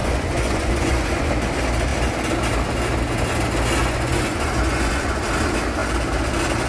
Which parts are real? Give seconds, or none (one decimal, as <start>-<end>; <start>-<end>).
1.3-3.8; 5.2-6.7